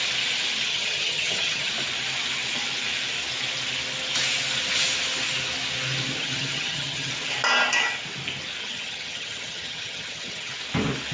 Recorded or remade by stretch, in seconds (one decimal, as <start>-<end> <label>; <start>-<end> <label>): 0.0-0.7 recorded; 0.7-1.7 remade; 1.7-6.2 recorded; 6.2-7.1 remade; 7.1-8.6 recorded; 8.6-10.5 remade; 10.5-11.1 recorded